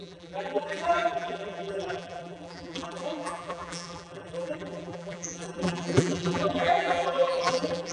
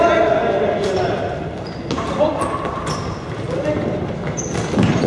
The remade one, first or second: first